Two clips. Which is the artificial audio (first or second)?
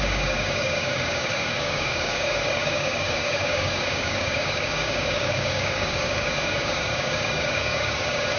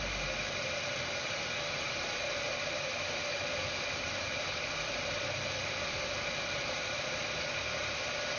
first